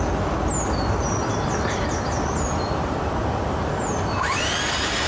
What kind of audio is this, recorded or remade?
recorded